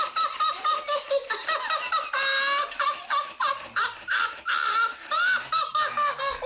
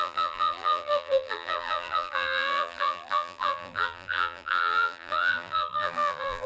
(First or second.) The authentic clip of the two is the first